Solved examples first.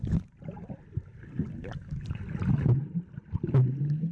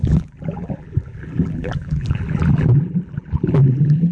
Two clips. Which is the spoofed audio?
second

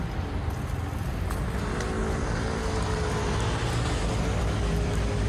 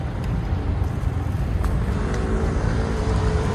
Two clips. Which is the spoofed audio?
second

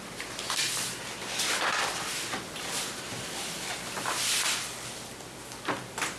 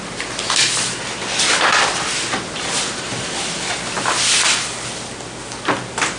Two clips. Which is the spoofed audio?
first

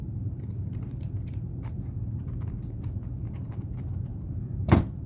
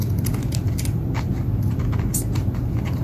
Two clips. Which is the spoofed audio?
first